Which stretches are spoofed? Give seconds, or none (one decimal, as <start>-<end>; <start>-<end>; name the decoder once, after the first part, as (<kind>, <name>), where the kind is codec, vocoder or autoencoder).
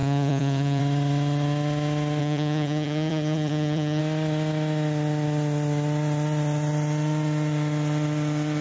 0.0-0.8 (vocoder, HiFi-GAN); 2.2-4.0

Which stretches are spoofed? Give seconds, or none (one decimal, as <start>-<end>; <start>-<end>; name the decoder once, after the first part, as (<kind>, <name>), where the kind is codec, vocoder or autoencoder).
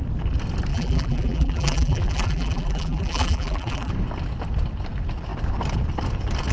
0.7-3.9 (vocoder, BigVGAN v2)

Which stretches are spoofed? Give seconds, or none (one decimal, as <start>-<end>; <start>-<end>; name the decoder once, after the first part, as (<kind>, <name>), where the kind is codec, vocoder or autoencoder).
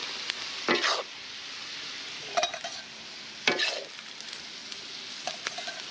none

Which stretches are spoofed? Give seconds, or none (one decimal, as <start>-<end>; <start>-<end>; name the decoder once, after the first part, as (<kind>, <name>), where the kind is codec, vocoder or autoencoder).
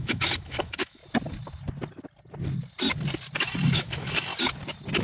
0.0-1.0 (autoencoder, DAC-VAE); 3.7-4.3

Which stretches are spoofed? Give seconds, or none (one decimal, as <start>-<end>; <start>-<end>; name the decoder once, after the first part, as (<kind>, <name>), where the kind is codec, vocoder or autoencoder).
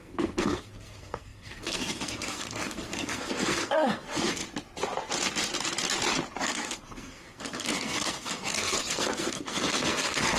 0.0-4.4 (codec, SNAC); 6.4-10.4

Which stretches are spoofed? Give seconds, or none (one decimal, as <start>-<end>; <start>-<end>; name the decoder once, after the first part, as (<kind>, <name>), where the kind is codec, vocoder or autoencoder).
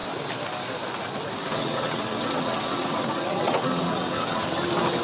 1.4-4.4 (vocoder, WaveNeXt)